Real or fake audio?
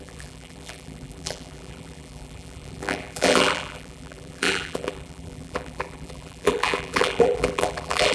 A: fake